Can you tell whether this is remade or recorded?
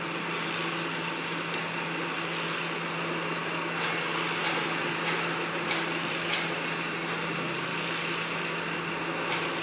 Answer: recorded